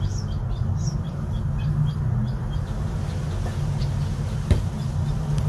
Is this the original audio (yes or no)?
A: yes